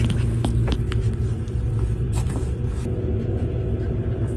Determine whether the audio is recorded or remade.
recorded